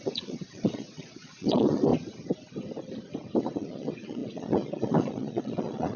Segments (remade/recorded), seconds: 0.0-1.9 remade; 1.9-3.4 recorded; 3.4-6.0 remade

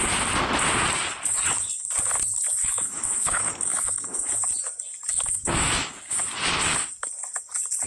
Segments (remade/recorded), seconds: 0.0-2.6 recorded; 2.6-4.3 remade; 4.3-5.1 recorded; 5.1-6.2 remade; 6.2-7.9 recorded

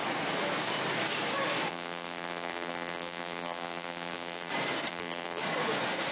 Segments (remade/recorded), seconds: 0.0-1.7 recorded; 1.7-4.5 remade; 4.5-4.9 recorded; 4.9-5.4 remade; 5.4-6.1 recorded

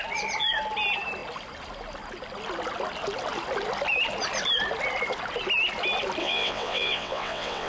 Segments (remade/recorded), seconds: 0.0-6.2 recorded; 6.2-7.7 remade

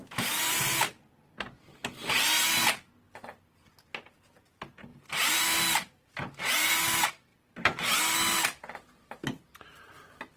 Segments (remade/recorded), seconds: 0.0-0.9 remade; 0.9-4.9 recorded; 4.9-6.1 remade; 6.1-7.3 recorded; 7.3-8.0 remade; 8.0-10.4 recorded

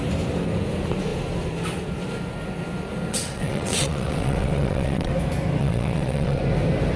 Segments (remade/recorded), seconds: 0.0-3.1 recorded; 3.1-5.1 remade; 5.1-5.6 recorded; 5.6-6.4 remade; 6.4-7.0 recorded

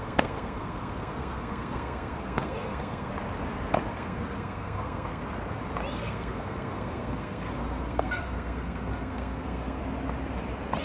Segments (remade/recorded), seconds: 0.0-3.1 remade; 3.1-3.9 recorded; 3.9-5.2 remade; 5.2-5.9 recorded; 5.9-9.8 remade; 9.8-10.8 recorded

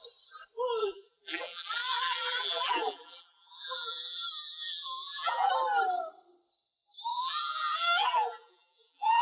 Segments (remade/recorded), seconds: 0.0-0.8 recorded; 0.8-5.5 remade; 5.5-7.1 recorded; 7.1-9.2 remade